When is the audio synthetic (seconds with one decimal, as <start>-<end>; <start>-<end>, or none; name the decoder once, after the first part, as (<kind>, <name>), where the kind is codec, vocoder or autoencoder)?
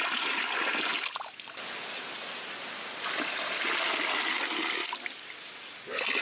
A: none